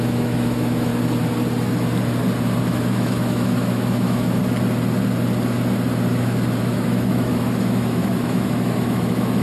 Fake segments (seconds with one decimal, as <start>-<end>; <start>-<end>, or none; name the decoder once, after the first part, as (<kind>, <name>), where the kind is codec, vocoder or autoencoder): 0.0-0.9 (autoencoder, DAC-VAE); 2.6-4.4; 6.6-9.4